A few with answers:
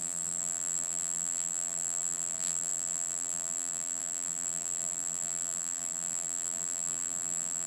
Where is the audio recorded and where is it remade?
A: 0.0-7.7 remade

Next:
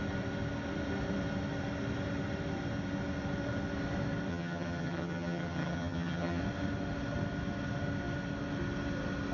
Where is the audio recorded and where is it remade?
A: 0.0-4.3 recorded; 4.3-6.4 remade; 6.4-9.3 recorded